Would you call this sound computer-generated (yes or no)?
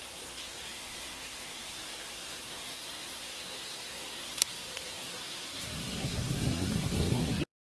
yes